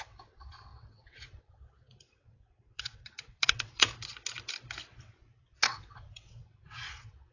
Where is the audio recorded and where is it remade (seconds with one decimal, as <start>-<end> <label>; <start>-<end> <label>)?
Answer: 0.0-3.9 remade; 3.9-5.0 recorded; 5.0-7.3 remade